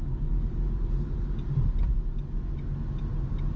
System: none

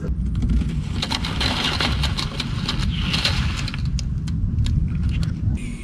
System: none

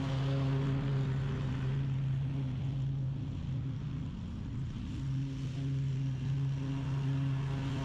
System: none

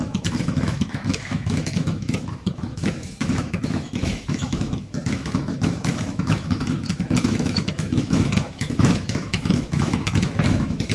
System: autoencoder, DAC-VAE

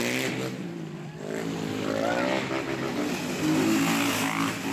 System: none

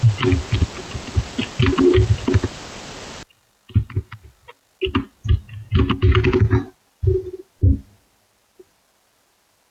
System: none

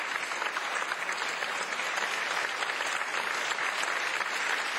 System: none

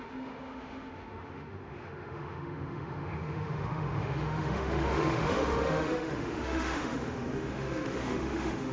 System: autoencoder, DAC-VAE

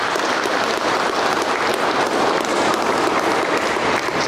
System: none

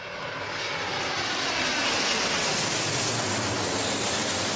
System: none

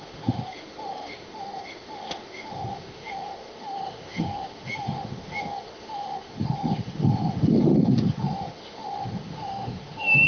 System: autoencoder, DAC-VAE